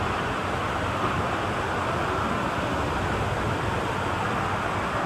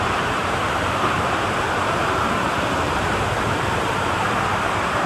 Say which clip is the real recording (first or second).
first